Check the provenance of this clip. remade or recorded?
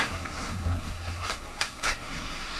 remade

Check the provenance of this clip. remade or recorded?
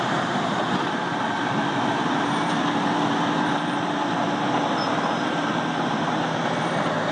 remade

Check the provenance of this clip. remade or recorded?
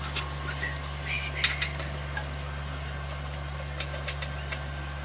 recorded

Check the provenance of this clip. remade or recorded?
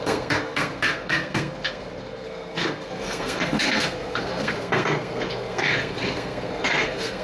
remade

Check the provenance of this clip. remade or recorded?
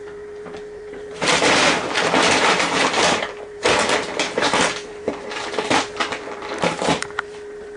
remade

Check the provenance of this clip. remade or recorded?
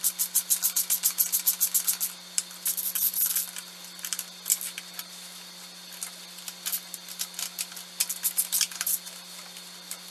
recorded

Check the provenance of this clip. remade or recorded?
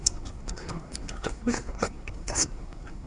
remade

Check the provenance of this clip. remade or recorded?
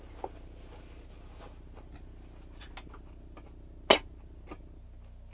recorded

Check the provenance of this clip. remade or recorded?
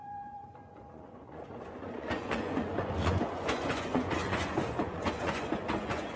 remade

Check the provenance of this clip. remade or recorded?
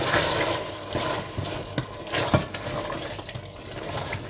recorded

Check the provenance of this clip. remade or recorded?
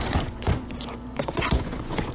remade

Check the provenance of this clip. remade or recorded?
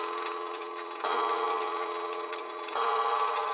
remade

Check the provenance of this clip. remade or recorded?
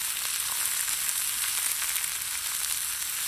recorded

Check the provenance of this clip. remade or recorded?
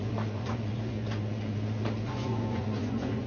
remade